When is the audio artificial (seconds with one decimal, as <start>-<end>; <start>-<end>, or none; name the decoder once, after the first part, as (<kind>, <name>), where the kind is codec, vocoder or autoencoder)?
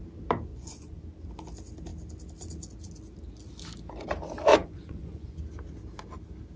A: 0.5-1.0 (vocoder, Vocos); 4.5-5.4